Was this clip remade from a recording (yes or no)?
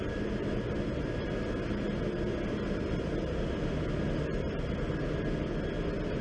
no